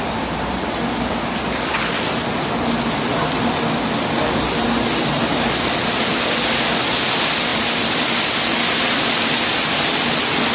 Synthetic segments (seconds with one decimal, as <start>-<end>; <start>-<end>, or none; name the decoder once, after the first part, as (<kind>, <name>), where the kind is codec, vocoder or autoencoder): 7.5-8.2 (vocoder, BigVGAN v2)